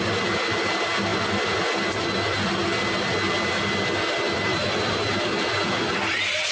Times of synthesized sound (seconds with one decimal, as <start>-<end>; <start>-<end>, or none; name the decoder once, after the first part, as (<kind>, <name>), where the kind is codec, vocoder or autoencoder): none